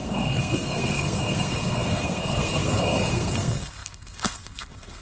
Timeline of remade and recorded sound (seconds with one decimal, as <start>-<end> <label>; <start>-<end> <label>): 0.0-5.0 remade